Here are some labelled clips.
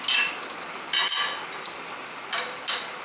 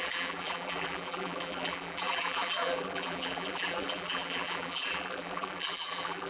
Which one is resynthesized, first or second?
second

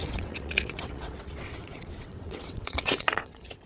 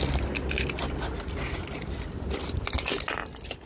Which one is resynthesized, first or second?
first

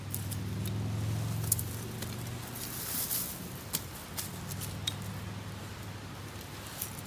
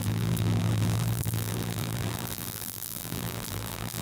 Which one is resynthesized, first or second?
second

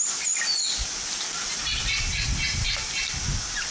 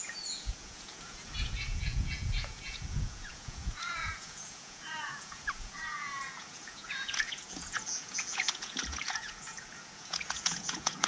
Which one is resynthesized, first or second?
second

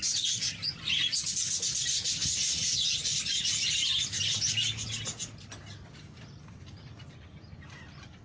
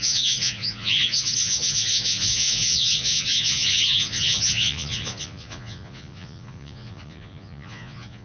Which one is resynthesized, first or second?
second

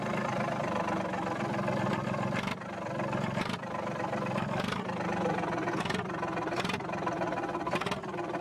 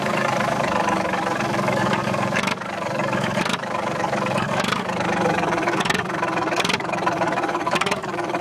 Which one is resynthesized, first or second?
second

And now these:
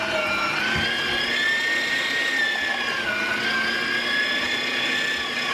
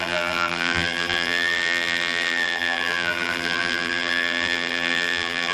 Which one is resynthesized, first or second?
second